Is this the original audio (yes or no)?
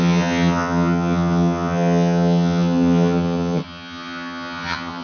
no